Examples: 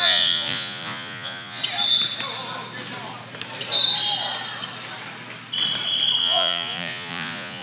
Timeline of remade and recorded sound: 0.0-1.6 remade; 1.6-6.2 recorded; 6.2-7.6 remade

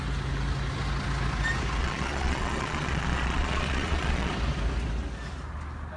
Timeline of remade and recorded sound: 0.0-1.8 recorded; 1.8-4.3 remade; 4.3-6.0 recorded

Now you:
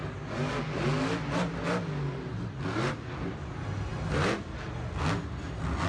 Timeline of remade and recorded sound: 0.0-5.9 recorded

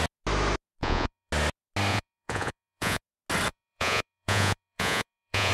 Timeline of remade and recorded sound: 0.0-0.8 recorded; 0.8-1.3 remade; 1.3-1.9 recorded; 1.9-3.0 remade; 3.0-3.5 recorded; 3.5-5.5 remade

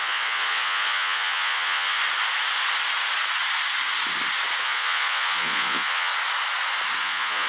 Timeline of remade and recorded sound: 0.0-2.0 remade; 2.0-4.6 recorded; 4.6-6.1 remade; 6.1-7.0 recorded; 7.0-7.5 remade